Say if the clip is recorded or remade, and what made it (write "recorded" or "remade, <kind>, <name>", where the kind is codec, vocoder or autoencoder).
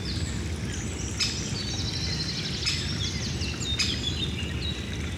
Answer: recorded